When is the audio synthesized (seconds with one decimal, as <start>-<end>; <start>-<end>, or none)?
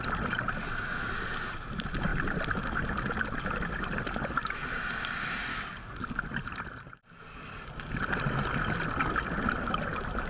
5.5-6.2